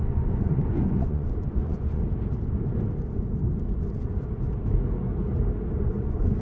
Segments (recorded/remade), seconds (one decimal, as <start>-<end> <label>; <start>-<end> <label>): 0.0-2.0 remade; 2.0-5.8 recorded; 5.8-6.4 remade